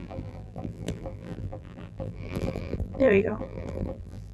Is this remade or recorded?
remade